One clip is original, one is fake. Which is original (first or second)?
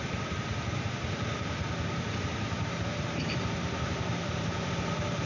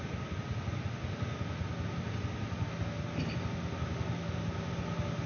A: second